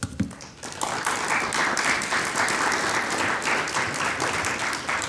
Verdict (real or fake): real